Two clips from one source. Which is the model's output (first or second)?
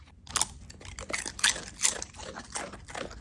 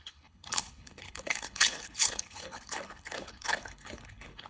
second